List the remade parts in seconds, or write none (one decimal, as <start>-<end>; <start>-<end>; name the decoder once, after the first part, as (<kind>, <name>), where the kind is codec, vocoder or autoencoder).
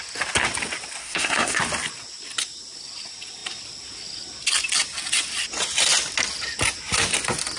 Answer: 1.0-1.6 (codec, SNAC)